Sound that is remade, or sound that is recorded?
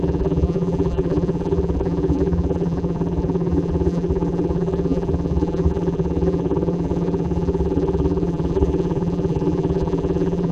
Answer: remade